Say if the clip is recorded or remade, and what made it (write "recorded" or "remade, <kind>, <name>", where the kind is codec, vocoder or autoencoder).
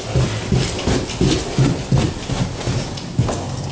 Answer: recorded